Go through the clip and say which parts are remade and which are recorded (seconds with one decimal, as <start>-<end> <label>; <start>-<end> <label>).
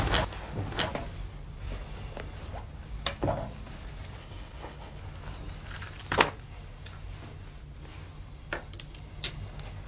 0.0-4.2 recorded; 4.2-5.0 remade; 5.0-9.9 recorded